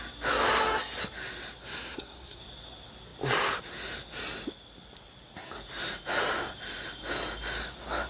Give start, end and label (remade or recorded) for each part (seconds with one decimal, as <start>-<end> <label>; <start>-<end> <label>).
0.0-1.6 recorded; 1.6-2.4 remade; 2.4-8.1 recorded